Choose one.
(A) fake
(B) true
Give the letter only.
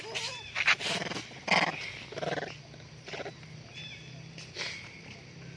B